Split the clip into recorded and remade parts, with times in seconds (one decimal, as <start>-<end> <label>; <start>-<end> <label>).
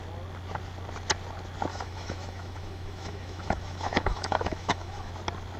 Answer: 0.0-1.7 recorded; 1.7-5.1 remade; 5.1-5.6 recorded